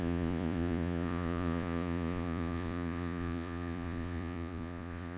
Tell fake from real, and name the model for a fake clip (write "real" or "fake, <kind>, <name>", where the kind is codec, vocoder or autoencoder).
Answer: fake, vocoder, Vocos